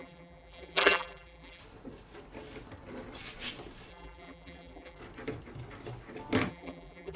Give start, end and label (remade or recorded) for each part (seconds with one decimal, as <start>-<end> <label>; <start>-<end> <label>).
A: 0.0-1.6 remade; 1.6-3.9 recorded; 3.9-5.0 remade; 5.0-6.5 recorded; 6.5-7.2 remade